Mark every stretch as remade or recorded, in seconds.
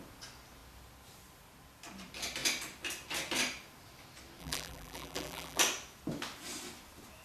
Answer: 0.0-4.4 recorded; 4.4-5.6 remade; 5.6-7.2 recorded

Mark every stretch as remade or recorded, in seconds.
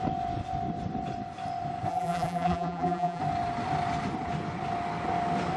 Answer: 0.0-1.9 recorded; 1.9-3.2 remade; 3.2-5.6 recorded